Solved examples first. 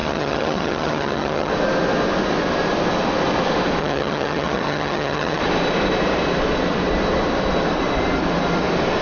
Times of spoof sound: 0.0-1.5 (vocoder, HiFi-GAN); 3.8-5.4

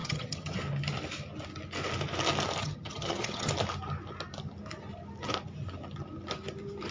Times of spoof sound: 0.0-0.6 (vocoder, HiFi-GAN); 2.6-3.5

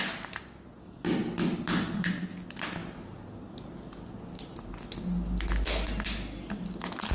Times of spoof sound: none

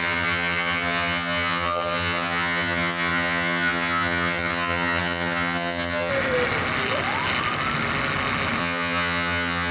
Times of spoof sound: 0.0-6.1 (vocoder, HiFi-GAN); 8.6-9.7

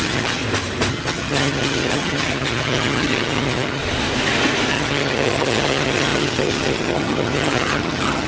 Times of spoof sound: 0.0-0.4 (vocoder, HiFi-GAN); 0.9-3.8; 4.7-8.3

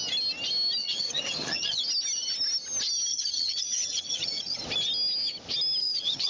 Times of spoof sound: 0.8-1.8 (vocoder, HiFi-GAN); 3.1-4.6; 5.8-6.3

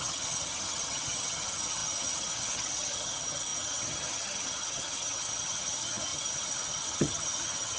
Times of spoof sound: 0.0-7.8 (vocoder, HiFi-GAN)